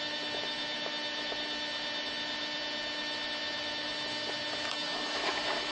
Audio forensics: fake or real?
fake